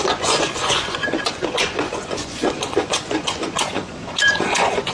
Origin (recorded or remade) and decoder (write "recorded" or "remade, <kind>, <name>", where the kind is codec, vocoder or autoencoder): remade, vocoder, Vocos